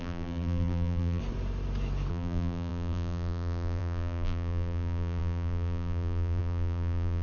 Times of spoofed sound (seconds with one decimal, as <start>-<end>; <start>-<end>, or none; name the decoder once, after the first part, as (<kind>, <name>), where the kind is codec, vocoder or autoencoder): 0.0-1.2 (vocoder, BigVGAN v2); 2.1-7.2